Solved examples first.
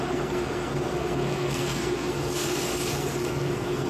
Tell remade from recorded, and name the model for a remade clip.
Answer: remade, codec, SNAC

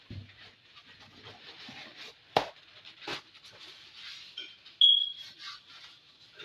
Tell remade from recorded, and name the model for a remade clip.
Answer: recorded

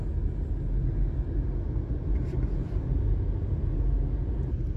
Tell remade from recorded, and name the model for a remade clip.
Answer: recorded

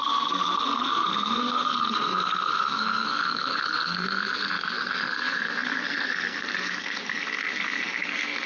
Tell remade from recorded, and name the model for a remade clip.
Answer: remade, codec, SNAC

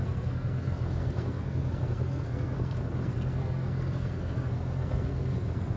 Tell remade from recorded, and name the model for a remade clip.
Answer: remade, codec, SNAC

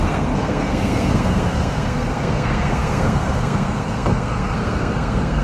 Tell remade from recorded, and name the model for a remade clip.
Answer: remade, codec, SNAC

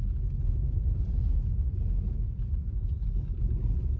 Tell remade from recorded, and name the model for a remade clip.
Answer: recorded